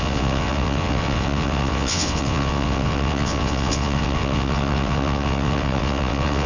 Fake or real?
fake